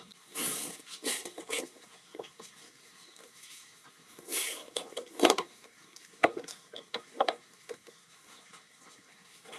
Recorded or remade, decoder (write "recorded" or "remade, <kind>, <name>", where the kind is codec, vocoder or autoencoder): remade, codec, SNAC